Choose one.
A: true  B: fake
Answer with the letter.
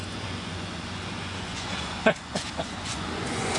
B